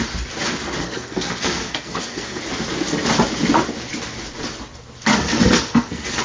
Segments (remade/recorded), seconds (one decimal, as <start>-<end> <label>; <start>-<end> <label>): 0.0-0.8 recorded; 0.8-2.4 remade; 2.4-5.1 recorded; 5.1-6.2 remade